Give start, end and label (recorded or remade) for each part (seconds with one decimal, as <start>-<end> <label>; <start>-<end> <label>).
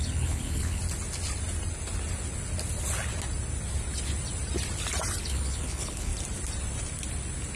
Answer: 0.0-0.8 remade; 0.8-5.2 recorded; 5.2-6.1 remade; 6.1-7.6 recorded